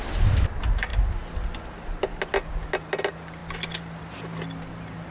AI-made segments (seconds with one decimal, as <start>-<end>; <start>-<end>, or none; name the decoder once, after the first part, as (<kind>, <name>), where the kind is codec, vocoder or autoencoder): none